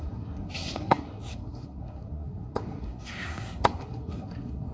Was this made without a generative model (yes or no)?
no